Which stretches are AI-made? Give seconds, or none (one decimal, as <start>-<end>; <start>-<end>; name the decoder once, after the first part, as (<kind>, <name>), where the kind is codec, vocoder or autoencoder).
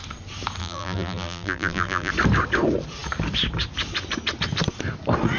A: 0.6-2.1 (vocoder, BigVGAN v2)